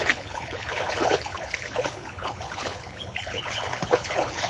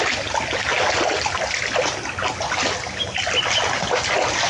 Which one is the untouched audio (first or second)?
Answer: second